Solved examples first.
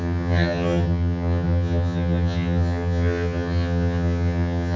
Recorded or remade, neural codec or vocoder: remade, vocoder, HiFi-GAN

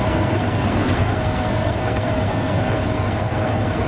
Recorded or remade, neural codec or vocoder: remade, codec, SNAC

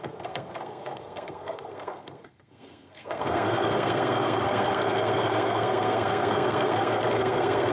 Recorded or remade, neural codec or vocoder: remade, codec, SNAC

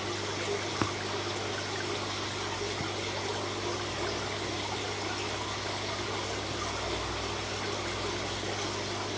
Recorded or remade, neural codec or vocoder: recorded